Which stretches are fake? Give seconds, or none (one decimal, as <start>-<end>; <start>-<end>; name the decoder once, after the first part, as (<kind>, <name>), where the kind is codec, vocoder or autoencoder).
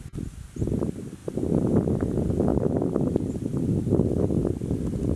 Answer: none